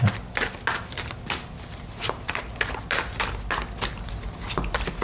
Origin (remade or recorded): recorded